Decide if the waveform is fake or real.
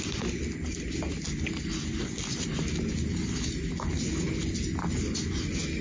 real